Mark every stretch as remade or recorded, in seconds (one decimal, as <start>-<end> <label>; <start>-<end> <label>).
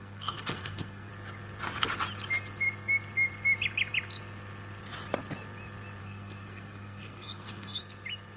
0.0-1.1 remade; 1.1-6.0 recorded; 6.0-7.8 remade; 7.8-8.4 recorded